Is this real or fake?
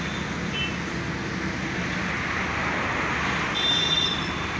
real